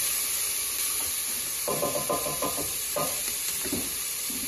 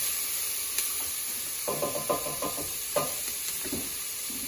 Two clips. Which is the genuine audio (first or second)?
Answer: second